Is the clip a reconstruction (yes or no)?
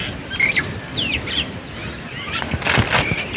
no